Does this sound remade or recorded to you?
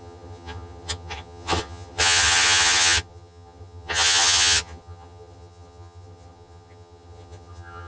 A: remade